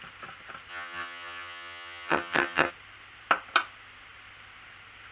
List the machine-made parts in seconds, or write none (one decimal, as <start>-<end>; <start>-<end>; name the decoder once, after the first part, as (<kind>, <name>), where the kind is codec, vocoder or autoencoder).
0.7-2.7 (vocoder, HiFi-GAN)